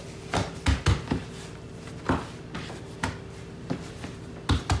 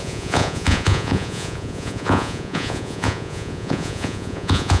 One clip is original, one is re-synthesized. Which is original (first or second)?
first